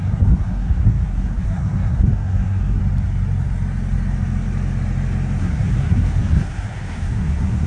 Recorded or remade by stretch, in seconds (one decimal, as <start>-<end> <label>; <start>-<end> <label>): 0.0-2.8 remade; 2.8-5.4 recorded; 5.4-7.7 remade

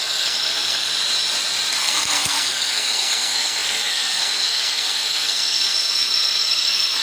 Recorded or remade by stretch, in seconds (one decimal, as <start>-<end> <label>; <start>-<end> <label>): 0.0-0.9 remade; 0.9-1.8 recorded; 1.8-7.0 remade

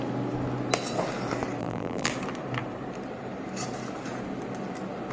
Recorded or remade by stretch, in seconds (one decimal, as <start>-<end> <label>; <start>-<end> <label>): 0.0-1.6 recorded; 1.6-2.1 remade; 2.1-5.1 recorded